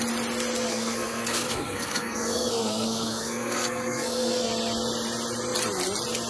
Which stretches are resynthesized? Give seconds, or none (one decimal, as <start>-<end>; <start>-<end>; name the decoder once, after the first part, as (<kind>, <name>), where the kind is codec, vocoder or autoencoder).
0.7-4.5 (codec, SNAC)